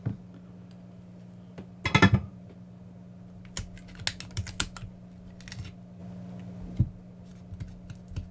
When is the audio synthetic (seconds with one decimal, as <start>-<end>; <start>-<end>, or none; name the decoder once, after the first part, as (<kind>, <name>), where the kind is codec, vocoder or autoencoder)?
none